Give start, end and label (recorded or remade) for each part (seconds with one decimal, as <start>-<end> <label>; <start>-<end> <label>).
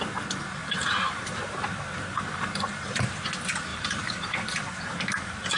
0.0-0.6 recorded; 0.6-3.2 remade; 3.2-3.7 recorded; 3.7-5.1 remade; 5.1-5.6 recorded